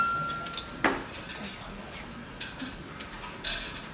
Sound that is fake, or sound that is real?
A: real